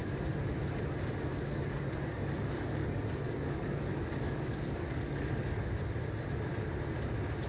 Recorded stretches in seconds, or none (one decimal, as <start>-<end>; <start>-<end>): 0.0-1.3; 5.8-7.5